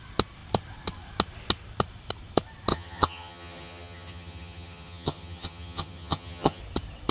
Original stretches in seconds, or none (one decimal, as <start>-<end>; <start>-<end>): 0.0-2.7; 6.6-7.1